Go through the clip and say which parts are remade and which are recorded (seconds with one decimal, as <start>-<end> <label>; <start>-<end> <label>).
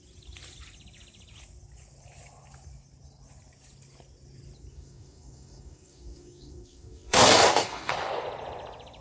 0.0-4.7 recorded; 4.7-7.9 remade; 7.9-9.0 recorded